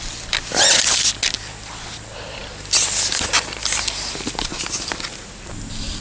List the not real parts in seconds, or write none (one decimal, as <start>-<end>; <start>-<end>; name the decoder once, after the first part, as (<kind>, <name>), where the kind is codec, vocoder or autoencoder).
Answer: none